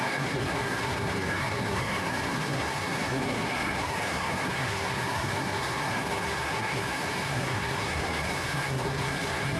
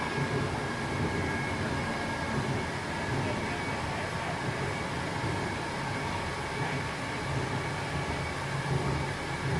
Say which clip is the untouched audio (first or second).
second